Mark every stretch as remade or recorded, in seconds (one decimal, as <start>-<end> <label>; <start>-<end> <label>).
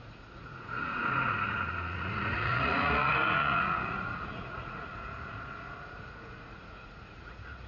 0.0-7.7 remade